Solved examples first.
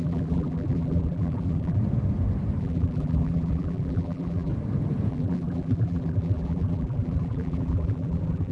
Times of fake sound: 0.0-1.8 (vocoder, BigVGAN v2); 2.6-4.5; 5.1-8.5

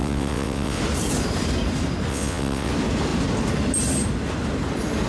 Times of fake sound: 0.0-0.8 (vocoder, WaveNeXt); 2.1-2.7

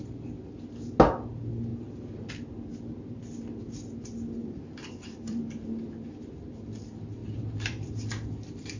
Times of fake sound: 1.7-2.3 (vocoder, BigVGAN v2); 4.4-5.4; 7.2-7.9

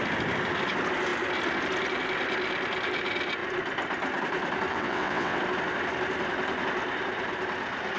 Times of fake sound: 4.7-5.4 (vocoder, WaveNeXt)